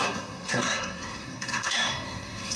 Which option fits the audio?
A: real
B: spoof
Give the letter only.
B